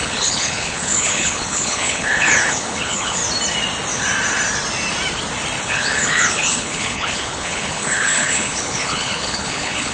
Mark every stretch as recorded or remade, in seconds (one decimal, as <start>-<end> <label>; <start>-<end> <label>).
0.0-3.2 remade; 3.2-5.6 recorded; 5.6-9.9 remade